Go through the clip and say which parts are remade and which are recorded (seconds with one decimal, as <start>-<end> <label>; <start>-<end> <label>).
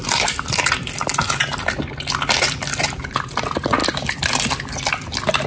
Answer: 0.0-5.5 recorded